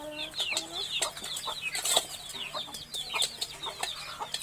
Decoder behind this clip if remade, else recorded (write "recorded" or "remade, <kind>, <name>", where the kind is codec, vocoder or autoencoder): recorded